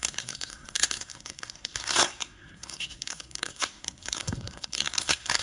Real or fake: fake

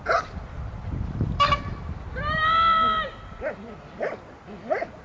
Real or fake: real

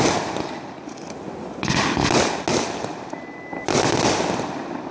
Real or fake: real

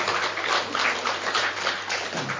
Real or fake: fake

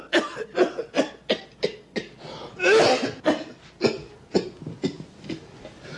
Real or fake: real